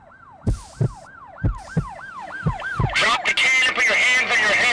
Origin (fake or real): real